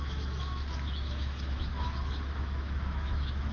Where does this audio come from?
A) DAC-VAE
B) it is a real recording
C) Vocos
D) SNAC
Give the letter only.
A